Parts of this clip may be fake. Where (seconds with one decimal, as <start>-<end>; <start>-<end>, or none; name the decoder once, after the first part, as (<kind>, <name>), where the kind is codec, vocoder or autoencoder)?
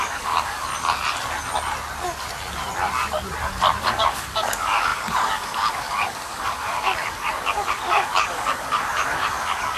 0.0-0.7 (codec, DAC); 3.8-9.8